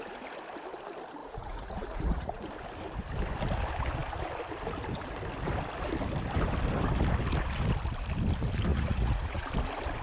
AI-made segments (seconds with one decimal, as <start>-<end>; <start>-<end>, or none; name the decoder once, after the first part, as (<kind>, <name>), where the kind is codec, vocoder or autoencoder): 1.2-2.5 (vocoder, Vocos); 8.7-9.5